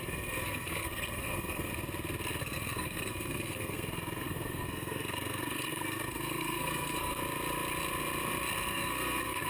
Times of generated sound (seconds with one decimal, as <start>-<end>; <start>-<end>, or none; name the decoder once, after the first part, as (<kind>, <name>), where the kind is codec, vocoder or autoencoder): 0.0-1.7 (codec, SNAC); 2.4-7.2; 8.7-9.5